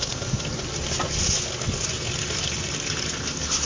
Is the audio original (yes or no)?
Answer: yes